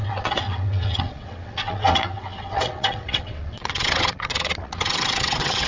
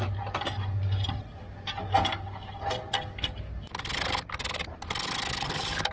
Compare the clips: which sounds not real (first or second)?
first